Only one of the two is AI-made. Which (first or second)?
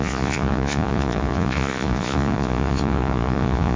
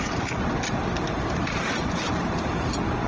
first